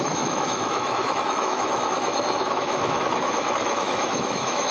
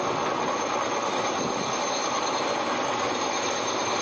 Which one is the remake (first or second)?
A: first